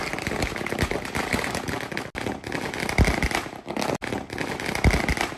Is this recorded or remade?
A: recorded